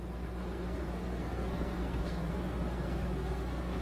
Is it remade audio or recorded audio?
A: remade